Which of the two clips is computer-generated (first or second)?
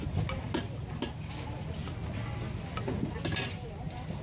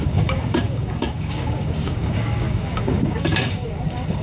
second